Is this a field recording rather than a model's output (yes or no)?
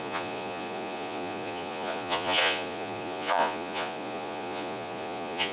no